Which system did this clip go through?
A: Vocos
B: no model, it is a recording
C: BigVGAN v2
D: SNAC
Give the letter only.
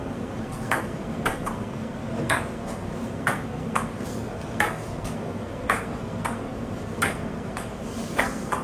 D